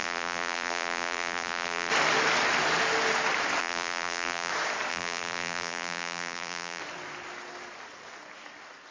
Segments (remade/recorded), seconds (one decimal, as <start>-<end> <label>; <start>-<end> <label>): 0.0-1.9 remade; 1.9-3.6 recorded; 3.6-4.5 remade; 4.5-4.9 recorded; 4.9-6.8 remade; 6.8-8.9 recorded